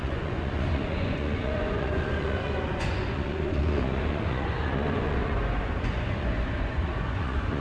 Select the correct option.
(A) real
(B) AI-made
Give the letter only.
B